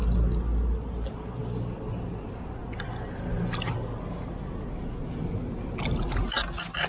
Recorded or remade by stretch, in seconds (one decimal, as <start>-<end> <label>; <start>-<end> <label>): 0.0-6.9 recorded